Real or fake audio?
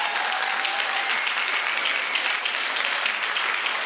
real